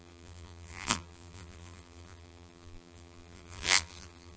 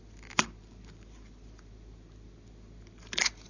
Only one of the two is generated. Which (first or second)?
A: first